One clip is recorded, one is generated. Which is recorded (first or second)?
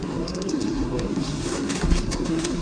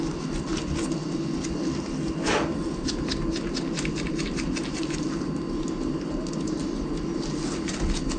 second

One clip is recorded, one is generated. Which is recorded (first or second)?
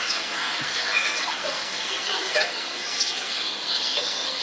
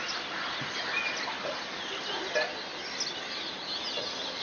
second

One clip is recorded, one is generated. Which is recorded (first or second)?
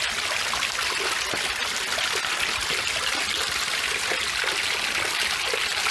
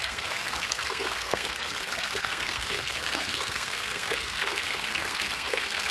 first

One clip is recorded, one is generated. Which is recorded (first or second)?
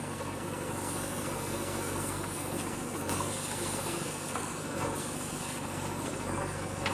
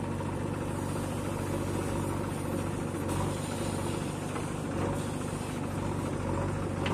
second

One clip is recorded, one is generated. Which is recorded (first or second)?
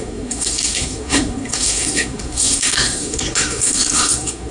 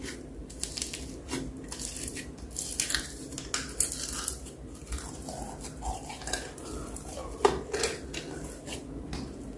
second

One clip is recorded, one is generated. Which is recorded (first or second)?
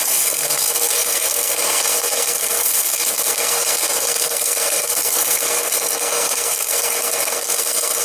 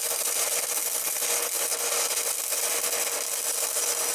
second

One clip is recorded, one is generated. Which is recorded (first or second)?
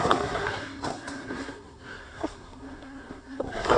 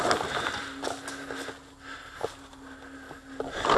second